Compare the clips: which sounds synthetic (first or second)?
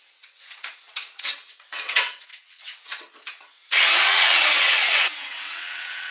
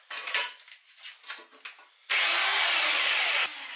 first